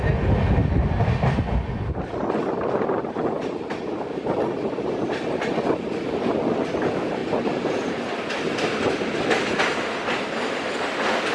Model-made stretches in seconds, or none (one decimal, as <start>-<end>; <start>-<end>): none